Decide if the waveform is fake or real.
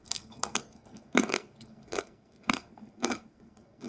fake